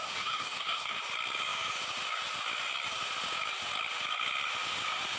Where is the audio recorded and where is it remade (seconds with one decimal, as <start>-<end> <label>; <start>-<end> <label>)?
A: 0.0-1.0 remade; 1.0-5.2 recorded